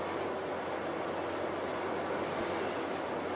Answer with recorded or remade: recorded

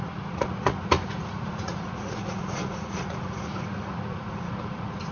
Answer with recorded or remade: remade